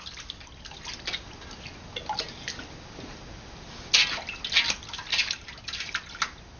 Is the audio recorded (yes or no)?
yes